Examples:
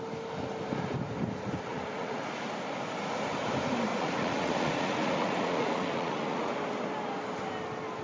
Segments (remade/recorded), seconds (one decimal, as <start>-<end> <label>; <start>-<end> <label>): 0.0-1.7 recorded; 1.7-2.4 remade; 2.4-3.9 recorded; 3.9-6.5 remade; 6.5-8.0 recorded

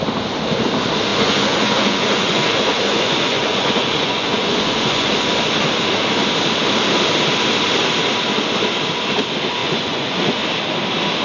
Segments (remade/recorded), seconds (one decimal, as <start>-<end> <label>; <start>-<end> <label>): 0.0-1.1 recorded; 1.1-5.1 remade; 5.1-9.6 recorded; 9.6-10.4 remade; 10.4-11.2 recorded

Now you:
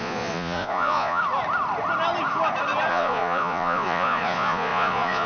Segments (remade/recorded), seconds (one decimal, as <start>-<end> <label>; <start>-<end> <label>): 0.0-1.2 remade; 1.2-2.9 recorded; 2.9-5.3 remade

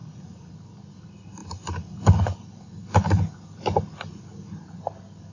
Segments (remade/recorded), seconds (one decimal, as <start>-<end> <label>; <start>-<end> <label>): 0.0-0.5 remade; 0.5-5.3 recorded